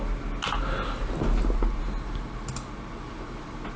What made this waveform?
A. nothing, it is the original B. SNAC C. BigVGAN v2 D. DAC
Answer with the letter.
A